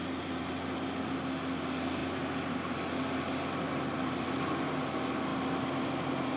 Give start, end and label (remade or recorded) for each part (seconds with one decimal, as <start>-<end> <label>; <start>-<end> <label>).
0.0-0.5 remade; 0.5-5.3 recorded; 5.3-5.8 remade; 5.8-6.4 recorded

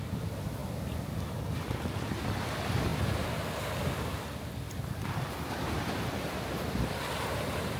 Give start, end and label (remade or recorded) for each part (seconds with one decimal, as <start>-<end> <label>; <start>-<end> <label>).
0.0-2.9 recorded; 2.9-3.8 remade; 3.8-7.8 recorded

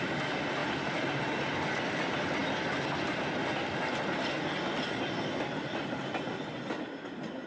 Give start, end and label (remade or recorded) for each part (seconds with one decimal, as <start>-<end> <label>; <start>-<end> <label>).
0.0-0.6 recorded; 0.6-1.2 remade; 1.2-7.5 recorded

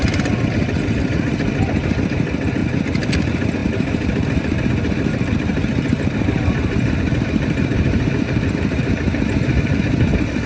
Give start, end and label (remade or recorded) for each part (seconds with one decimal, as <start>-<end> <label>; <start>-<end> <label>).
0.0-2.6 recorded; 2.6-3.1 remade; 3.1-3.6 recorded; 3.6-4.7 remade; 4.7-5.5 recorded; 5.5-10.0 remade; 10.0-10.5 recorded

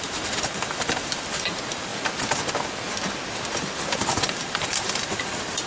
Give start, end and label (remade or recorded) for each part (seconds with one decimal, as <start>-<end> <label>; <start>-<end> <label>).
0.0-1.9 remade; 1.9-4.2 recorded; 4.2-5.7 remade

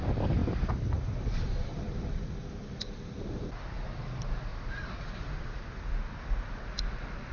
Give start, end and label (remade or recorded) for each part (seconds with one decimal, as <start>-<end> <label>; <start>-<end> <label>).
0.0-0.4 recorded; 0.4-2.3 remade; 2.3-4.5 recorded; 4.5-5.0 remade; 5.0-7.3 recorded

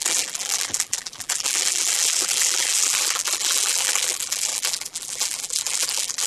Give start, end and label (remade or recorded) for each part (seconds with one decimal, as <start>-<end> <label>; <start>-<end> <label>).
0.0-6.3 remade

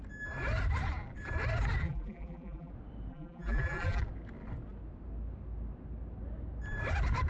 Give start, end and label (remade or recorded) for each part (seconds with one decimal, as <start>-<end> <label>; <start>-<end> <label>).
0.0-1.8 recorded; 1.8-2.7 remade; 2.7-3.1 recorded; 3.1-4.0 remade; 4.0-7.3 recorded